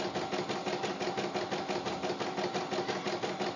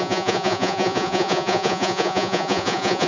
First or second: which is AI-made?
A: second